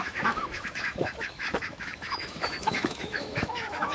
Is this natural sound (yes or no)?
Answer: no